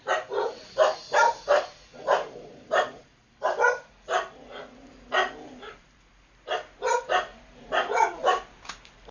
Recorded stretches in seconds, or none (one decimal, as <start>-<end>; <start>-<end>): 4.9-7.3; 8.7-9.1